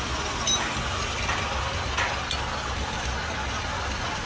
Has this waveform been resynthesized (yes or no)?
no